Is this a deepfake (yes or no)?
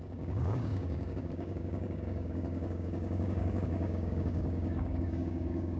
yes